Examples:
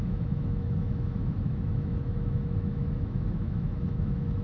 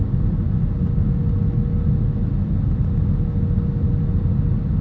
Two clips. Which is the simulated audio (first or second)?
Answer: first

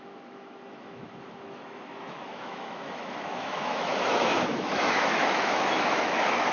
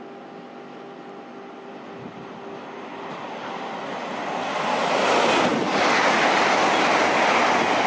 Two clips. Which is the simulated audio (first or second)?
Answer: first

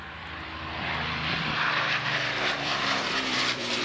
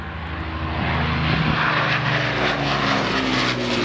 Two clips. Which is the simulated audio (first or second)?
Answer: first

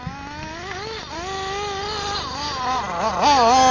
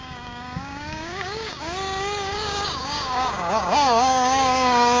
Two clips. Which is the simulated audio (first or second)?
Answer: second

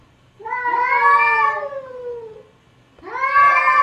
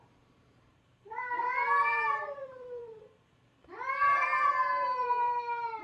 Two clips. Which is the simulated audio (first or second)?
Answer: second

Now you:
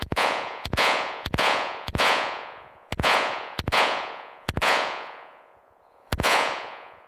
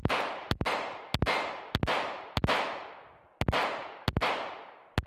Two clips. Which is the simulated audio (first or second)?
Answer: first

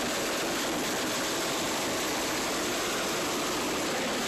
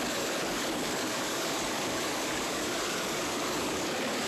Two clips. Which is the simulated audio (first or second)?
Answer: second